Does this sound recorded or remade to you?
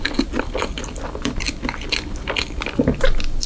recorded